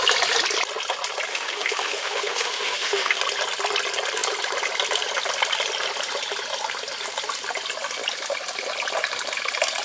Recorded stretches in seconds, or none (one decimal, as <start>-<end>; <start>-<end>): 0.0-1.3; 3.2-9.8